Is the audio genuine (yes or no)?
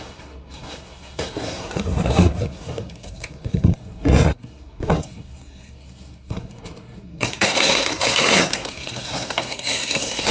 no